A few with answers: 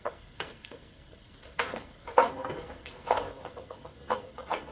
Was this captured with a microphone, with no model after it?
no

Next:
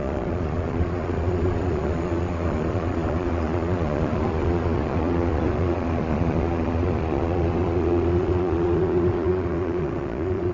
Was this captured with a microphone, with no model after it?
no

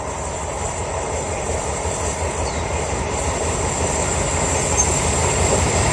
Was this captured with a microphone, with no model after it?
no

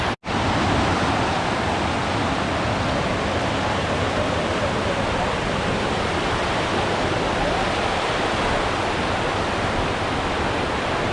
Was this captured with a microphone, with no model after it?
yes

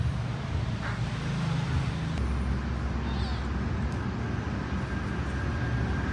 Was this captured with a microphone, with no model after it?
yes